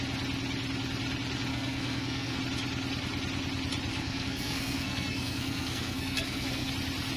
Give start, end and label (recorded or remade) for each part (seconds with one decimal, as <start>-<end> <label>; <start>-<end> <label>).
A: 0.0-1.5 recorded; 1.5-2.4 remade; 2.4-3.9 recorded; 3.9-6.7 remade; 6.7-7.2 recorded